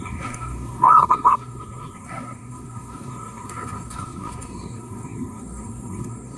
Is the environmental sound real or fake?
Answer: fake